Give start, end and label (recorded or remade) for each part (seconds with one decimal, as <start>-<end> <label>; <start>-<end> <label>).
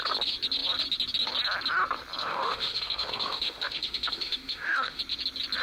0.0-2.2 recorded; 2.2-5.0 remade; 5.0-5.6 recorded